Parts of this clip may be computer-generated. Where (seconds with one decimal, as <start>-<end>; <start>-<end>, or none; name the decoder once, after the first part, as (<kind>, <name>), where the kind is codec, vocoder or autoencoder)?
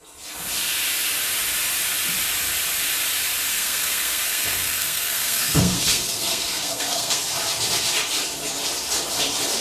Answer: 3.5-7.2 (codec, SNAC)